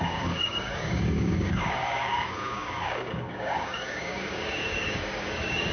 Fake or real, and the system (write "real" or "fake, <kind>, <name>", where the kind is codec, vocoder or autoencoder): fake, codec, DAC